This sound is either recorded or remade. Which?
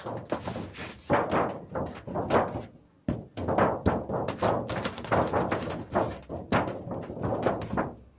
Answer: recorded